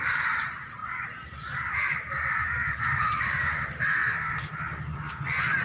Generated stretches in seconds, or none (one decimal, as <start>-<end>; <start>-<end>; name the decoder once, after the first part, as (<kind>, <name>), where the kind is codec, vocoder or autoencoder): 0.0-4.0 (vocoder, BigVGAN v2)